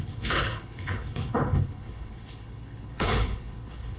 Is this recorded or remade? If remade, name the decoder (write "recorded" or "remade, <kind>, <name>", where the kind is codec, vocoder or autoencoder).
remade, codec, HILCodec